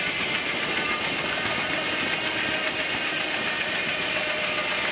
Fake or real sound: real